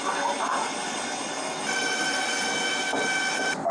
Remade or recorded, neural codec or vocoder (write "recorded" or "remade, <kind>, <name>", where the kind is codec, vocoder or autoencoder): recorded